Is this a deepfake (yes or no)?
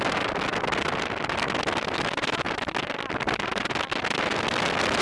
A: no